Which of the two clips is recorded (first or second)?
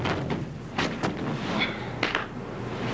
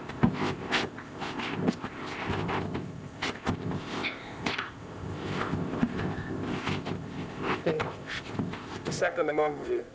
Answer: first